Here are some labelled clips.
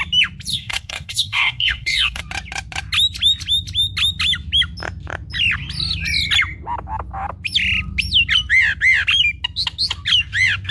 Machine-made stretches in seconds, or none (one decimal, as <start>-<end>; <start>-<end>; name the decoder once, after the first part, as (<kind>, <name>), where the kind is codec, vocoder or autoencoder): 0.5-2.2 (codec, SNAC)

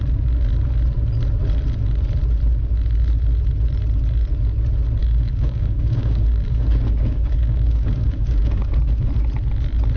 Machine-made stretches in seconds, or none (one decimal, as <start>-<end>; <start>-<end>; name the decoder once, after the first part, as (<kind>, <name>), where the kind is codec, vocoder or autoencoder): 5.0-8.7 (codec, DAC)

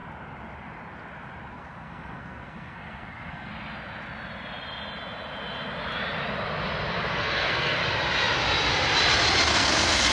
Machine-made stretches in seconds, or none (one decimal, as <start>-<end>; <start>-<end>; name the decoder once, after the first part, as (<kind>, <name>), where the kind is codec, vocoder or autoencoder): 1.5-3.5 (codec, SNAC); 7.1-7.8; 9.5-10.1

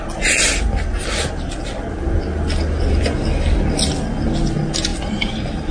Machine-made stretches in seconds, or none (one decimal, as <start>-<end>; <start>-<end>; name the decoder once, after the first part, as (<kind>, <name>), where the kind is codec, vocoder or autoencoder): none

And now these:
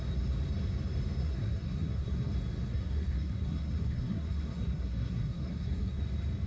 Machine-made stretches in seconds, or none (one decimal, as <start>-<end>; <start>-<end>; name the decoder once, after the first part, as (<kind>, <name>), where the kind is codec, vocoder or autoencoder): 1.2-2.3 (codec, SNAC); 2.7-6.0

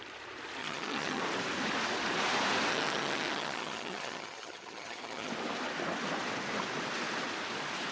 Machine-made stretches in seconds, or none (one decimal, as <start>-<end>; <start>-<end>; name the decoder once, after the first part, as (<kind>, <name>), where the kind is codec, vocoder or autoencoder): 0.6-1.2 (vocoder, HiFi-GAN); 2.7-5.3